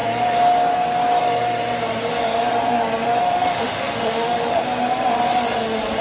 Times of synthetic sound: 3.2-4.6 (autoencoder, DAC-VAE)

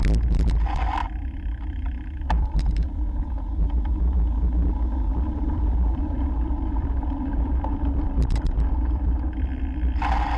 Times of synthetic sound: 5.1-9.6 (vocoder, BigVGAN v2)